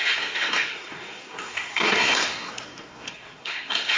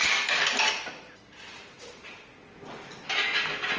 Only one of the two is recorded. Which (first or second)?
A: second